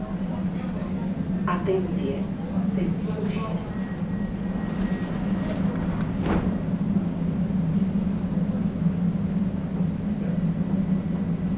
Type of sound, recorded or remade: recorded